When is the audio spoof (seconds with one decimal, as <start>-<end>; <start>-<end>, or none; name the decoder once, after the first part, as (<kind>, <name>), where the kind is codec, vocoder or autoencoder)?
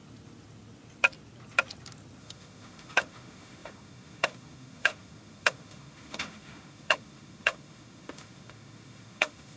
2.2-9.6 (autoencoder, DAC-VAE)